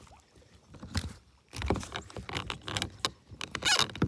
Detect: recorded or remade recorded